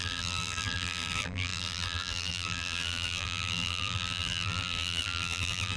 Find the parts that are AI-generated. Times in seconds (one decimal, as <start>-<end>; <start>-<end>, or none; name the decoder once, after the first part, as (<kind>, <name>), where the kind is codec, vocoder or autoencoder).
0.0-5.8 (vocoder, BigVGAN v2)